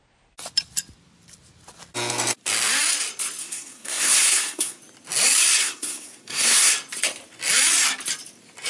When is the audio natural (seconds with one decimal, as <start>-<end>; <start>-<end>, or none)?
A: 0.0-3.4; 4.8-5.6; 6.7-8.7